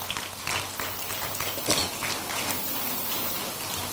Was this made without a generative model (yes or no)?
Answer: yes